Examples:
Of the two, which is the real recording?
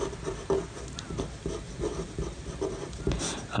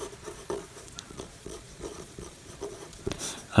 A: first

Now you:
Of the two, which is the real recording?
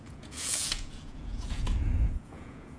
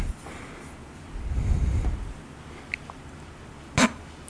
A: second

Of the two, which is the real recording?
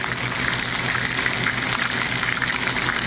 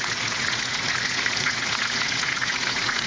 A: first